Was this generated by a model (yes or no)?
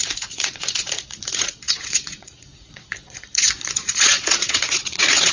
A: yes